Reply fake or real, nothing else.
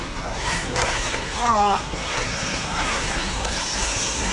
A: fake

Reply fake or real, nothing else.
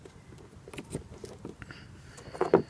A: real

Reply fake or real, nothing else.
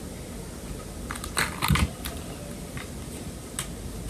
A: real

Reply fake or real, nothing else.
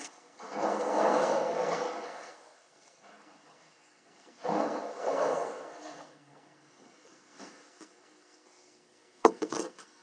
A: fake